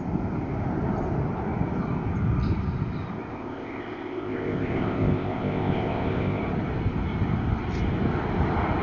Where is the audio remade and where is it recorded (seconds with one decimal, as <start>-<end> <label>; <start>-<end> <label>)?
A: 0.0-3.3 recorded; 3.3-6.4 remade; 6.4-8.8 recorded